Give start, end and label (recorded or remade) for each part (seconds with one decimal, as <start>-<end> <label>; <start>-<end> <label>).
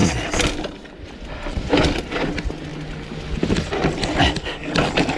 0.0-5.2 recorded